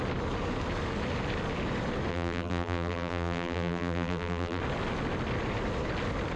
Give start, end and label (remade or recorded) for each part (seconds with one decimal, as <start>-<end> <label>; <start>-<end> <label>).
0.0-2.1 recorded; 2.1-4.6 remade; 4.6-6.4 recorded

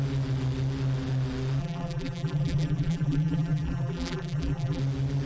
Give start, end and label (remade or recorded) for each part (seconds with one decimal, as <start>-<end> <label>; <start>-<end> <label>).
0.0-1.6 recorded; 1.6-4.8 remade; 4.8-5.3 recorded